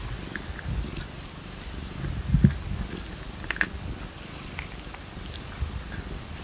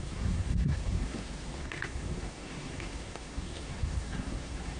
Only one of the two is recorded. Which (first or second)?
first